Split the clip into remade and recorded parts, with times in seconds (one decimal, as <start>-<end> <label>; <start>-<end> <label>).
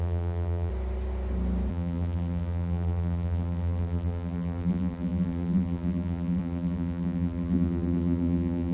0.0-0.7 remade; 0.7-1.7 recorded; 1.7-8.7 remade